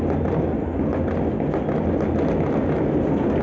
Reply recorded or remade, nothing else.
recorded